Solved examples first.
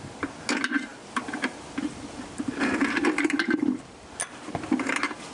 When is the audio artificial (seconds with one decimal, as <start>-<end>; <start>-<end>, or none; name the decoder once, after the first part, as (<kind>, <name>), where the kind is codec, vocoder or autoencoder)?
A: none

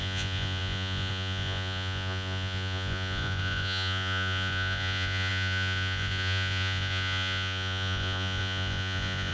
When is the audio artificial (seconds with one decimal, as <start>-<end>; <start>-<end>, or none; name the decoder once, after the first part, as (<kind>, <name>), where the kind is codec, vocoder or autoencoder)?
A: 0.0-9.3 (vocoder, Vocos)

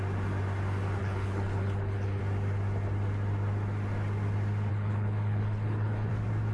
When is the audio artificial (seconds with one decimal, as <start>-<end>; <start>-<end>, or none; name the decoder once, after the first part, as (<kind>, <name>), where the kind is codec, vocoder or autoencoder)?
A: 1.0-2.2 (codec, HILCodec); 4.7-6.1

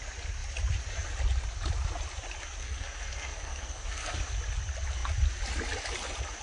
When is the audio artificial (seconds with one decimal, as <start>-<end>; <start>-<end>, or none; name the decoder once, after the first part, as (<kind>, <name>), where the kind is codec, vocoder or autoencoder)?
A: 2.6-4.2 (codec, SNAC)

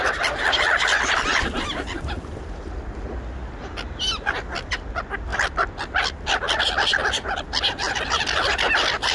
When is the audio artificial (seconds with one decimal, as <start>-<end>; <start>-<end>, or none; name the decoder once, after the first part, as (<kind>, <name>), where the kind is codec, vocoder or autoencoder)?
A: none